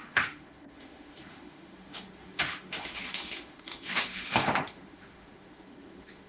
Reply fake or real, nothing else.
fake